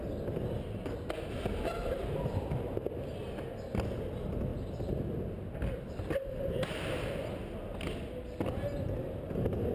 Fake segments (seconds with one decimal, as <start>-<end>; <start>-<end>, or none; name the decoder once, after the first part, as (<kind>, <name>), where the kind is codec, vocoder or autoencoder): 1.8-3.4 (vocoder, BigVGAN v2)